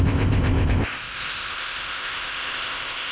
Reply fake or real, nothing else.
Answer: fake